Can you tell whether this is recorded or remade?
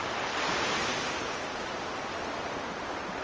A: remade